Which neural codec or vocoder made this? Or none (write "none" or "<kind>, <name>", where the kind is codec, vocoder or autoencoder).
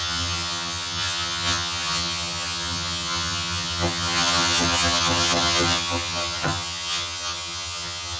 vocoder, HiFi-GAN